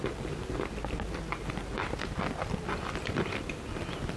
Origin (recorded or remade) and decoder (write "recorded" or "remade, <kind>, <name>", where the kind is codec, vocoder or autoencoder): recorded